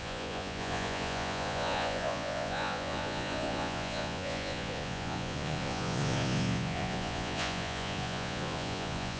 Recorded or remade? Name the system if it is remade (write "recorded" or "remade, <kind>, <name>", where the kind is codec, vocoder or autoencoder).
remade, vocoder, Vocos